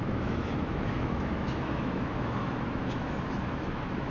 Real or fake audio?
fake